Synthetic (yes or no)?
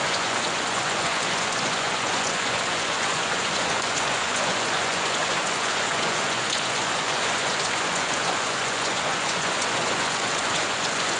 yes